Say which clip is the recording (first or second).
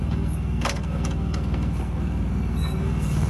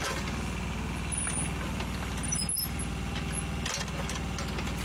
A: second